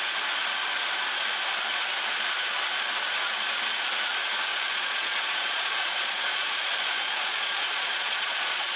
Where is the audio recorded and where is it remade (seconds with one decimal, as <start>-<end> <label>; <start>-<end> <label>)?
0.0-4.5 recorded; 4.5-8.8 remade